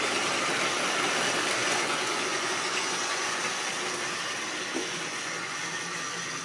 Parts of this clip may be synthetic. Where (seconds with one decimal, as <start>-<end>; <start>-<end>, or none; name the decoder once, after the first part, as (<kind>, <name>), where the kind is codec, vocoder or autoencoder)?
1.6-3.4 (vocoder, Vocos); 4.8-5.6

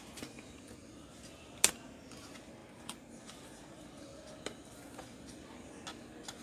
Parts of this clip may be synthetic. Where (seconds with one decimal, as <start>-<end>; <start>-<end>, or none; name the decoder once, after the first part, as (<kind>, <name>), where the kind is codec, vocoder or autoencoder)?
0.8-1.7 (vocoder, BigVGAN v2); 2.6-5.7

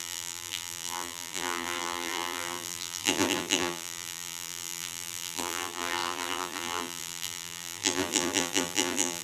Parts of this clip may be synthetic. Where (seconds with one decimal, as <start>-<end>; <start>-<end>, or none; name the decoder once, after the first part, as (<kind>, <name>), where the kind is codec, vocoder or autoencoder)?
0.0-9.2 (vocoder, BigVGAN v2)

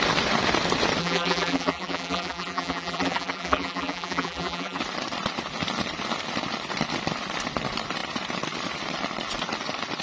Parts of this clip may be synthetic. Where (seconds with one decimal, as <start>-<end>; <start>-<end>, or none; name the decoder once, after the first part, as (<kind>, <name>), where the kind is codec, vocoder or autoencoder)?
1.0-4.8 (vocoder, BigVGAN v2)

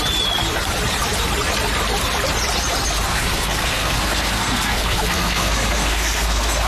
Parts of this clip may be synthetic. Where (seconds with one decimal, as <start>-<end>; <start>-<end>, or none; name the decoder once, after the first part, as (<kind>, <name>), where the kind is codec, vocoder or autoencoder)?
3.1-6.7 (codec, SNAC)